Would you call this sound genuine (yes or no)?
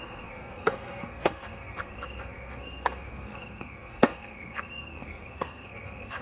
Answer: no